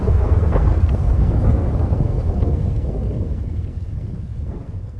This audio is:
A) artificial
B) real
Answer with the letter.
A